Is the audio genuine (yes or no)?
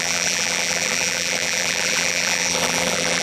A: no